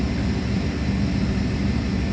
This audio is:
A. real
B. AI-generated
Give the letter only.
A